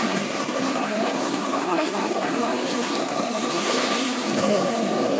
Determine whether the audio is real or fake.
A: fake